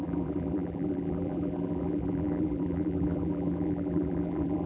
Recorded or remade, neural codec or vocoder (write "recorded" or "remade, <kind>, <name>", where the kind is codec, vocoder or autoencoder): remade, vocoder, BigVGAN v2